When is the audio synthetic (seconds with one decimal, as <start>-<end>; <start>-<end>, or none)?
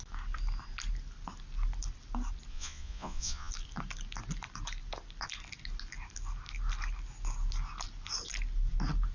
2.5-3.5